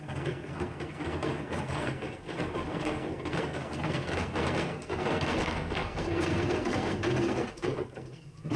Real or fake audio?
fake